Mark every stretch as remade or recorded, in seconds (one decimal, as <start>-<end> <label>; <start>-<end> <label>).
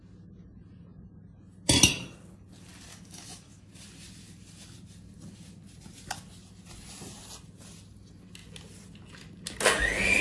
0.0-2.9 recorded; 2.9-3.7 remade; 3.7-10.2 recorded